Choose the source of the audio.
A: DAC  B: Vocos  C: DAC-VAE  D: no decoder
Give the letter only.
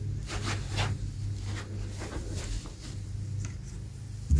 D